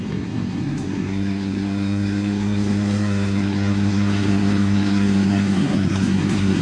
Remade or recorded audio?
remade